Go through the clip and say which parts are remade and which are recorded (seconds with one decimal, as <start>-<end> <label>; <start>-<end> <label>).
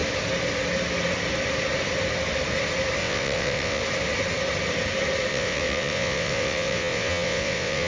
0.0-3.0 recorded; 3.0-3.8 remade; 3.8-5.3 recorded; 5.3-7.9 remade